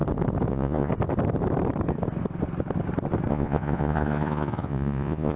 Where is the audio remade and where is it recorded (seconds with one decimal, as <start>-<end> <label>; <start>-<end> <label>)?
0.0-0.5 recorded; 0.5-0.9 remade; 0.9-3.3 recorded; 3.3-5.4 remade